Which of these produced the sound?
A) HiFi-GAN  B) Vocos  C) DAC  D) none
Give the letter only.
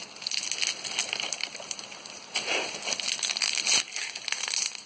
D